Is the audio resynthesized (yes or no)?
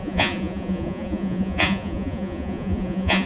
yes